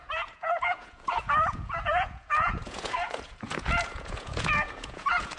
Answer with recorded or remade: remade